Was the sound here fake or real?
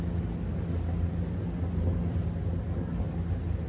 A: real